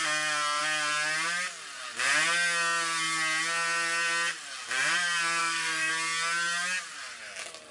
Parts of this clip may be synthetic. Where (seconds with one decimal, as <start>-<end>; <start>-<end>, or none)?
5.4-5.9